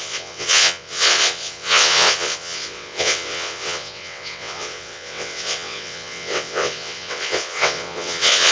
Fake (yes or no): yes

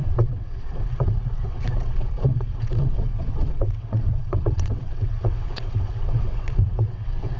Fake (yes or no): yes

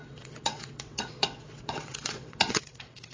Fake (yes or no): yes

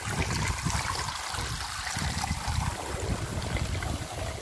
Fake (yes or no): no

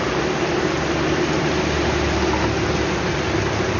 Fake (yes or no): no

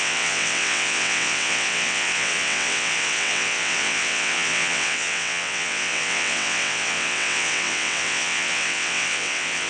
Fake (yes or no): yes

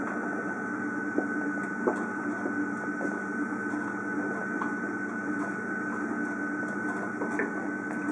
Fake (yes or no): no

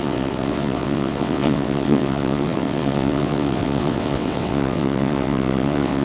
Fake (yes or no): yes